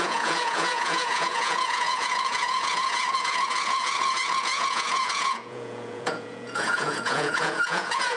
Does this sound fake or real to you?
fake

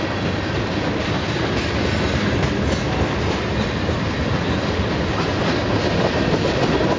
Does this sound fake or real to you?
real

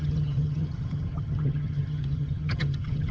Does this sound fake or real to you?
fake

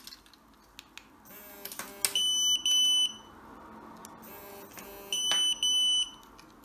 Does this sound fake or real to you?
real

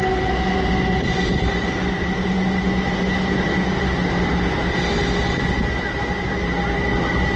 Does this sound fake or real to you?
real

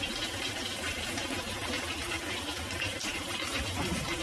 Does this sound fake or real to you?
real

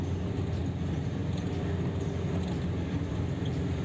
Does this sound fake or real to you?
real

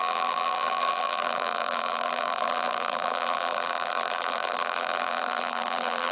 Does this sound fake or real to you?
fake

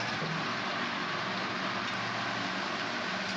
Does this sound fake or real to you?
real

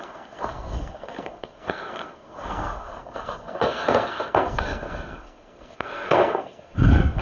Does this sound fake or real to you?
fake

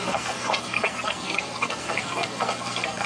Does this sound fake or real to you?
fake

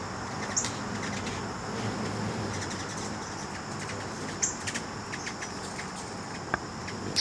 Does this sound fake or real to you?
real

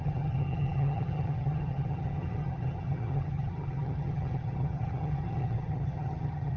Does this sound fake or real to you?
fake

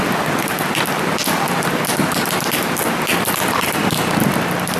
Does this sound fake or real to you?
real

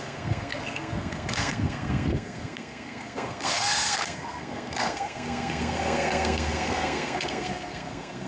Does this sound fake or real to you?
fake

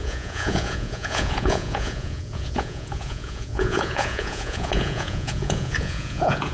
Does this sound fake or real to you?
fake